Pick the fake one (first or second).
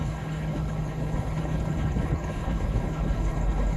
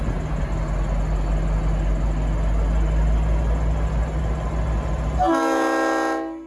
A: first